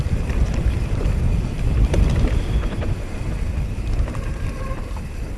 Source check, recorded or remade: recorded